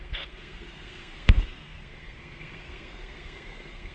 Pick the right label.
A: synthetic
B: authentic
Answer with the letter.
A